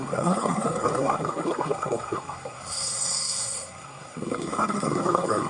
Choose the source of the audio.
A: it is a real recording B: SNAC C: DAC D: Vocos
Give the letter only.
B